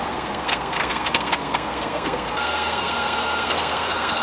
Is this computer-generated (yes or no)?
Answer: yes